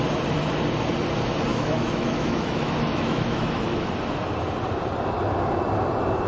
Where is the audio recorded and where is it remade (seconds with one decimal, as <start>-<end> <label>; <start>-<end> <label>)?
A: 0.0-1.5 recorded; 1.5-3.9 remade; 3.9-6.3 recorded

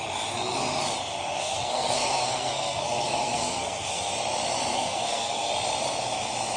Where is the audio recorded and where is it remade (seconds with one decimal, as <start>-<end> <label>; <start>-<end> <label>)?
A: 0.0-1.1 recorded; 1.1-4.1 remade; 4.1-4.7 recorded; 4.7-5.5 remade; 5.5-6.6 recorded

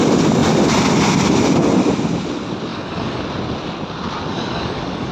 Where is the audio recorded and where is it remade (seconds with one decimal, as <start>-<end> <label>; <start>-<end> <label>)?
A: 0.0-2.7 recorded; 2.7-3.2 remade; 3.2-4.3 recorded; 4.3-5.1 remade

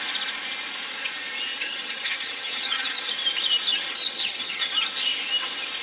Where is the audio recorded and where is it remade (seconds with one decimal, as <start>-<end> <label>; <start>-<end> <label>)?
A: 0.0-1.5 recorded; 1.5-3.0 remade; 3.0-3.7 recorded; 3.7-4.8 remade; 4.8-5.8 recorded

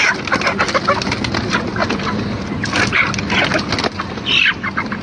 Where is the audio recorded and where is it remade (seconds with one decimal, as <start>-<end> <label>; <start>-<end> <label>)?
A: 0.0-5.0 recorded

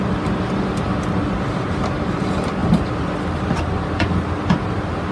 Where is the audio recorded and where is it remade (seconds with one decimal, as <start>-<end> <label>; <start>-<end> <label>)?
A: 0.0-5.1 recorded

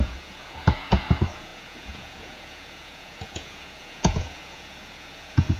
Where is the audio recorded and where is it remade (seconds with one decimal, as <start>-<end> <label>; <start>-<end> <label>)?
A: 0.0-5.6 remade

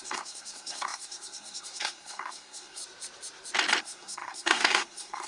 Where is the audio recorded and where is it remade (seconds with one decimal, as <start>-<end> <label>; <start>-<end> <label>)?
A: 0.0-2.8 remade; 2.8-3.8 recorded; 3.8-5.3 remade